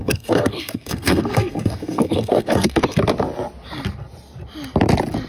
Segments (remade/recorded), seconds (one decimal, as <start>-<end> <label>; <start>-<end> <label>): 0.0-3.0 remade; 3.0-5.3 recorded